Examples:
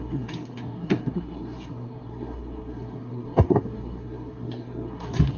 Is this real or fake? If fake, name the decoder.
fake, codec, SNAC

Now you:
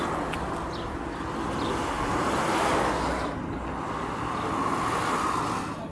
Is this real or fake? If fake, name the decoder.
real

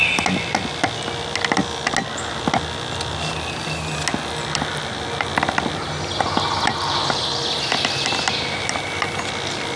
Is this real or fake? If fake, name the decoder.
real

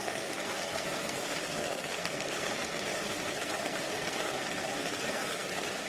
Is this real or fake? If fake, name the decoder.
fake, codec, SNAC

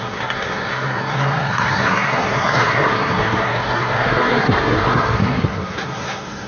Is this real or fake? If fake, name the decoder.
fake, codec, SNAC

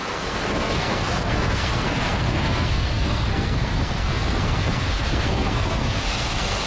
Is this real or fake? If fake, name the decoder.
fake, codec, SNAC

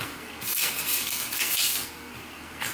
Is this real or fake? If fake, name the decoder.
fake, codec, SNAC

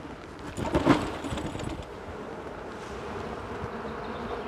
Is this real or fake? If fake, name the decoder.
real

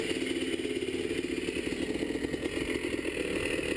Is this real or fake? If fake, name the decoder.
real